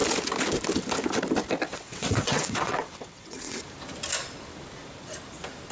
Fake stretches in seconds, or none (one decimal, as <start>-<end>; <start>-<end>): 1.7-3.6